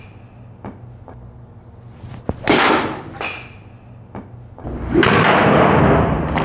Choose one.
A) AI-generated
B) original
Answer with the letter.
B